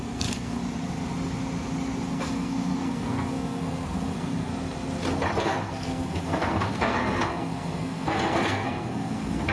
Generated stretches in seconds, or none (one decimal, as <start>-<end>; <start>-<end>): 0.0-0.6; 2.1-4.5; 5.4-9.5